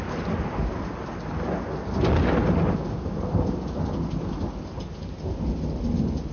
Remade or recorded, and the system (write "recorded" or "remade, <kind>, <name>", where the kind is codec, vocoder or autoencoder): recorded